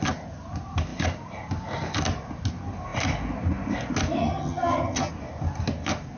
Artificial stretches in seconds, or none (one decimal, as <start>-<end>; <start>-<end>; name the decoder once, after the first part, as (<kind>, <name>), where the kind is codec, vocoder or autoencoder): 4.2-5.1 (vocoder, HiFi-GAN)